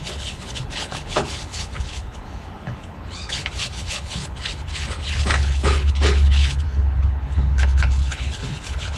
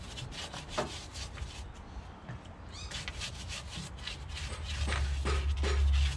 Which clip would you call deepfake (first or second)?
first